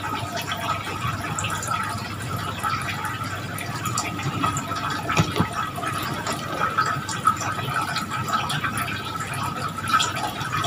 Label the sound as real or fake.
real